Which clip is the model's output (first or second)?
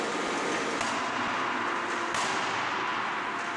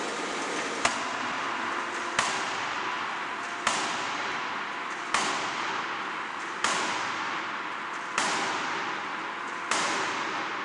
second